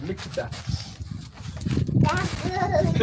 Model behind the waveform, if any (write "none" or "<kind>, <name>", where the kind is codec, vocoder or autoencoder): none